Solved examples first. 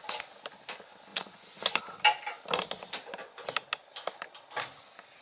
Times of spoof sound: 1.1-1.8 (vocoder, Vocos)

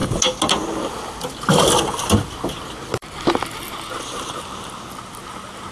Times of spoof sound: none

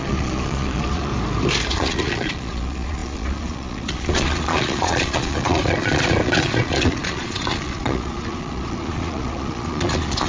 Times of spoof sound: 0.0-1.1 (vocoder, Vocos); 1.7-10.3

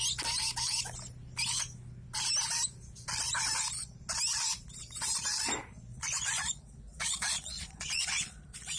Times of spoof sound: 5.9-8.8 (vocoder, Vocos)

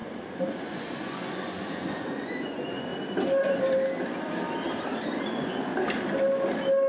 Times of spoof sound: 0.0-2.9 (vocoder, Vocos); 5.2-5.7

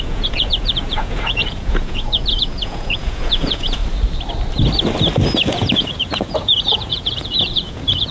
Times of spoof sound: 0.0-3.8 (vocoder, Vocos); 5.5-8.1